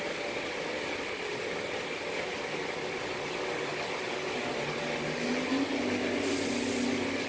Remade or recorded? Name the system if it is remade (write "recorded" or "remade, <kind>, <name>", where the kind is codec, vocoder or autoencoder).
recorded